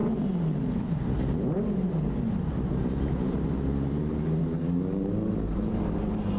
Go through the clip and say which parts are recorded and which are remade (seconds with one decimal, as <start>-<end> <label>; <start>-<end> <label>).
0.0-4.4 recorded; 4.4-5.1 remade; 5.1-6.4 recorded